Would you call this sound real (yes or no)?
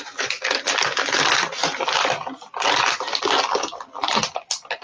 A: yes